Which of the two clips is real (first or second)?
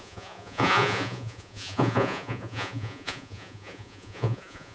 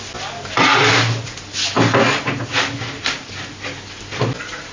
second